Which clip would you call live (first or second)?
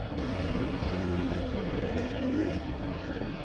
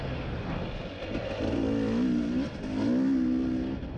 second